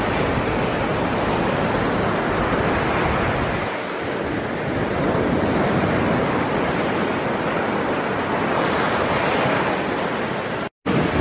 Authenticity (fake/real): real